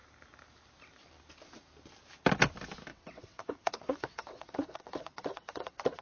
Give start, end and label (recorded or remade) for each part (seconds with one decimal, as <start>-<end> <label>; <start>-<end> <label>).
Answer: 0.0-2.9 recorded; 2.9-6.0 remade